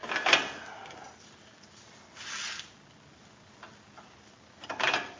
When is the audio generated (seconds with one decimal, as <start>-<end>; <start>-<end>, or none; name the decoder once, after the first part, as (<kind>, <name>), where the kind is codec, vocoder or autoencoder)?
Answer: none